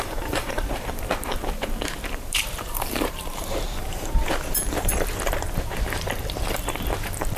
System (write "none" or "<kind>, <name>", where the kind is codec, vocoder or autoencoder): vocoder, BigVGAN v2